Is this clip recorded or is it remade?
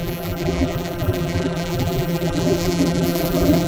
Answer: remade